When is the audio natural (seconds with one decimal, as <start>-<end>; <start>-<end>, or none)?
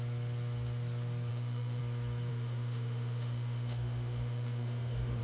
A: 0.0-1.3; 1.8-2.3